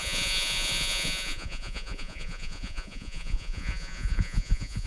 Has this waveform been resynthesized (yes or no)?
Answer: yes